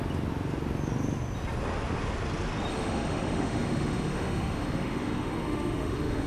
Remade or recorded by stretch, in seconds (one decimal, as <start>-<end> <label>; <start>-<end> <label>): 0.0-2.7 recorded; 2.7-6.3 remade